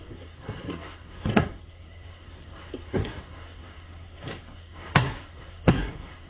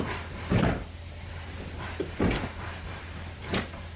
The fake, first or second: first